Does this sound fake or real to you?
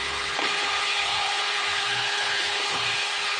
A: fake